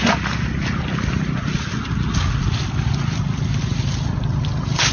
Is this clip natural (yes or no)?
yes